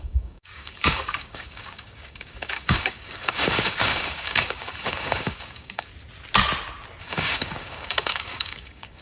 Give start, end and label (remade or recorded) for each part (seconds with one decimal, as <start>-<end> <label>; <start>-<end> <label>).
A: 0.0-5.9 remade; 5.9-7.0 recorded; 7.0-9.0 remade